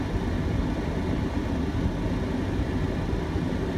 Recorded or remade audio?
recorded